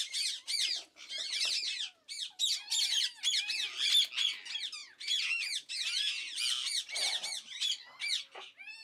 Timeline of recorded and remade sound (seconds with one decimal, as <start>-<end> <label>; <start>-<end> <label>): 0.0-4.8 recorded; 4.8-5.7 remade; 5.7-8.8 recorded